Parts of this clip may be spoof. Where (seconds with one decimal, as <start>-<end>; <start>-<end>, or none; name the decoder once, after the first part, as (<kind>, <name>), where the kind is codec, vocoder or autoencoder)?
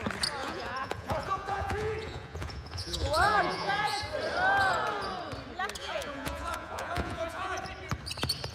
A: 0.4-4.0 (vocoder, Vocos); 5.8-7.6